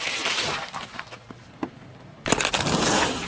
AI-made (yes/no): no